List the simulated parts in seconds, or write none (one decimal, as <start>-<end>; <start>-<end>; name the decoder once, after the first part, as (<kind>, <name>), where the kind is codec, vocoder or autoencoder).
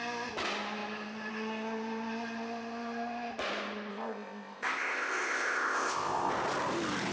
3.9-6.3 (codec, ZipCodec)